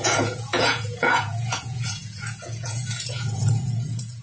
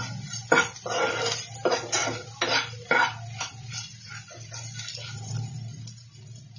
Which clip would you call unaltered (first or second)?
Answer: second